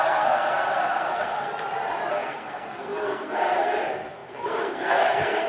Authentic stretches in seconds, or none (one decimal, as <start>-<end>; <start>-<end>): 1.5-2.1